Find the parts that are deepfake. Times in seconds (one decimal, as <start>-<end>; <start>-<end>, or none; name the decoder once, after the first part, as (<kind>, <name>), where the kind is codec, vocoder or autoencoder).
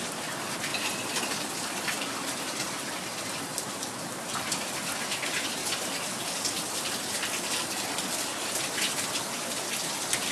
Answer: none